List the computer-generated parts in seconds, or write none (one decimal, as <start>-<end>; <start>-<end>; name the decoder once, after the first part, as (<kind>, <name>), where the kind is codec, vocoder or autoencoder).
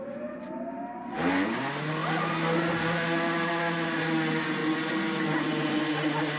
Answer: none